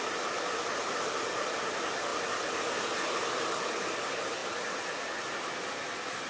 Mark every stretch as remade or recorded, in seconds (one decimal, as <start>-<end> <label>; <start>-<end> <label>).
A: 0.0-6.3 recorded